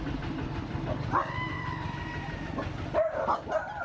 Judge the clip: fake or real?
real